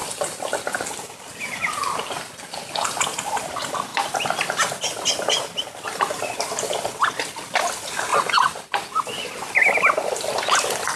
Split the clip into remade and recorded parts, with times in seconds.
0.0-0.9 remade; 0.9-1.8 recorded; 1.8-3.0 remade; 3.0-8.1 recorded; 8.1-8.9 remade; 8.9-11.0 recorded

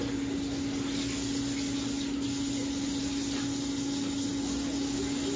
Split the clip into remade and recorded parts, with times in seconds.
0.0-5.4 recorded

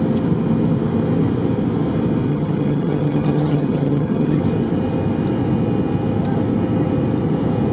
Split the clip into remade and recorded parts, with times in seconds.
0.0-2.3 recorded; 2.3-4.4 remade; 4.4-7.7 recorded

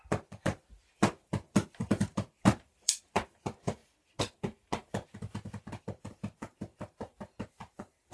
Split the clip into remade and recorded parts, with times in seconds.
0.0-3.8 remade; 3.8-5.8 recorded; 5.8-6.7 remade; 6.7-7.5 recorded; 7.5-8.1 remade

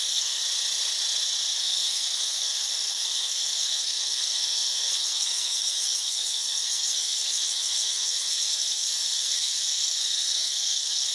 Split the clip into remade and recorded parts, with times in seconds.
0.0-0.4 remade; 0.4-1.6 recorded; 1.6-11.1 remade

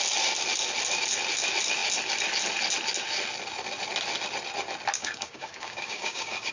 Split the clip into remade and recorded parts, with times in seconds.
0.0-5.0 recorded; 5.0-6.5 remade